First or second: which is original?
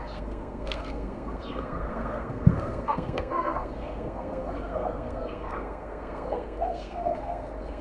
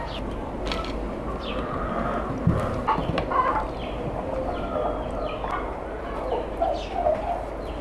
second